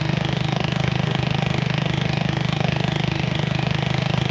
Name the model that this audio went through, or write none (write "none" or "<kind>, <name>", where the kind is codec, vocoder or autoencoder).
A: autoencoder, DAC-VAE